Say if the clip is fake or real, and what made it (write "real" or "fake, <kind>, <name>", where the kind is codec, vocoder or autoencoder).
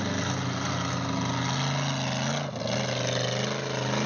real